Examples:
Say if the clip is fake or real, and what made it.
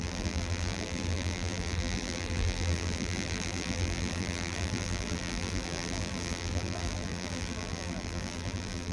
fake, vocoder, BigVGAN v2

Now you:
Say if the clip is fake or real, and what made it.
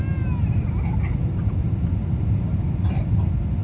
real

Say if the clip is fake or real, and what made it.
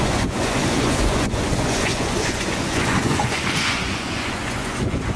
fake, vocoder, Vocos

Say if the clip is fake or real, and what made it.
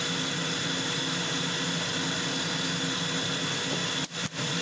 real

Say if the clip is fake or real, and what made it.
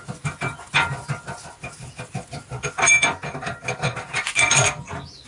real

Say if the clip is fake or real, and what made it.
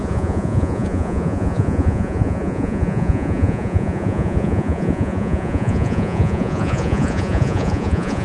fake, vocoder, Vocos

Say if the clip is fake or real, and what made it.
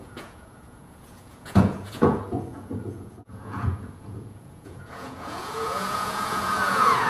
fake, vocoder, Vocos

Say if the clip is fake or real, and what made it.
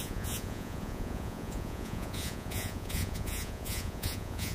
fake, vocoder, Vocos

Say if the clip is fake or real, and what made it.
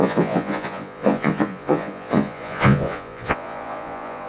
fake, vocoder, Vocos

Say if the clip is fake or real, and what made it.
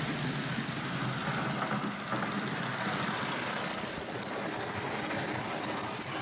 real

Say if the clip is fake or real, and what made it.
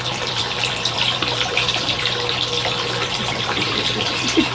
fake, vocoder, BigVGAN v2